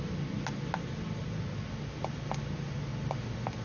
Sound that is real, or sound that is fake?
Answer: real